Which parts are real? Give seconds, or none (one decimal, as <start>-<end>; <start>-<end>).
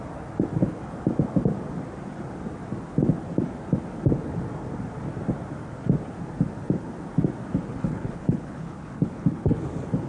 0.0-7.7; 9.6-10.1